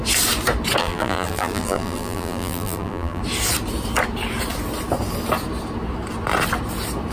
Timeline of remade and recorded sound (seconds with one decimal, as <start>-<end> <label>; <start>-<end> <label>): 0.0-0.8 recorded; 0.8-3.2 remade; 3.2-7.1 recorded